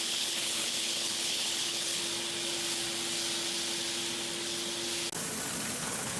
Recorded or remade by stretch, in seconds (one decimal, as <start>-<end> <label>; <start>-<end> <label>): 0.0-2.0 remade; 2.0-5.7 recorded; 5.7-6.2 remade